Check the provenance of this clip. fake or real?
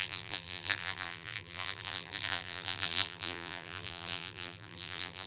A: fake